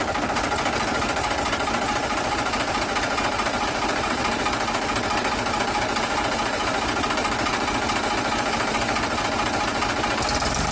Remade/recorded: recorded